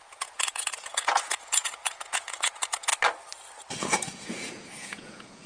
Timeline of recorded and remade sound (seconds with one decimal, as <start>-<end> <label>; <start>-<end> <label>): 0.0-2.9 remade; 2.9-3.8 recorded; 3.8-5.5 remade